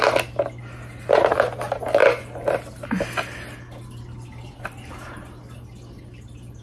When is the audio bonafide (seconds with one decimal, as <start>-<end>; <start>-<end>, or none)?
0.0-6.6